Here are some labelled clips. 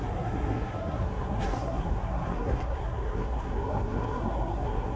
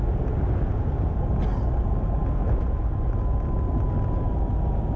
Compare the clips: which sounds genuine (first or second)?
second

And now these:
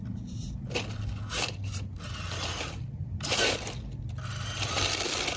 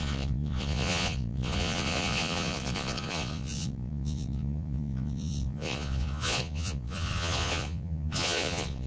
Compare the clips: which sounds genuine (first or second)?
first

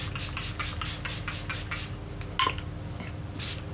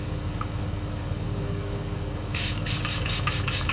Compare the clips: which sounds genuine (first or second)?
first